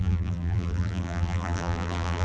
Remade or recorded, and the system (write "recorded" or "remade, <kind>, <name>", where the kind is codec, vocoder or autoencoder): remade, vocoder, BigVGAN v2